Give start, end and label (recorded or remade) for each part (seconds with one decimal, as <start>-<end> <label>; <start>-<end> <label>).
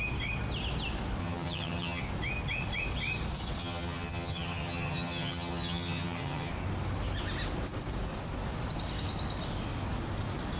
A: 0.0-1.2 recorded; 1.2-2.0 remade; 2.0-3.6 recorded; 3.6-6.5 remade; 6.5-10.6 recorded